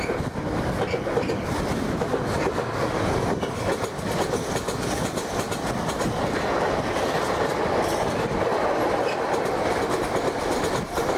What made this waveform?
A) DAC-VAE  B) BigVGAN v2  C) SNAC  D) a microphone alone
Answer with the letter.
D